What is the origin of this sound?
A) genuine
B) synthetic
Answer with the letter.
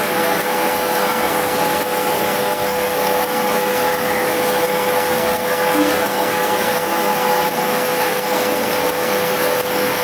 B